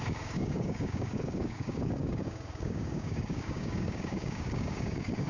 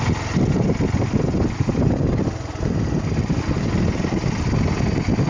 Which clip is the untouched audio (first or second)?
second